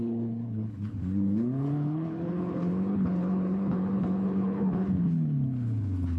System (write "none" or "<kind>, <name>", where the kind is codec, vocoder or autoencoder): codec, HILCodec